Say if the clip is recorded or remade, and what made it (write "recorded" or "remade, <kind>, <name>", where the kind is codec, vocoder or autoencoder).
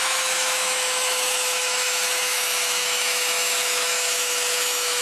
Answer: remade, autoencoder, DAC-VAE